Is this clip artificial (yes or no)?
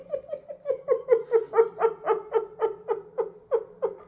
no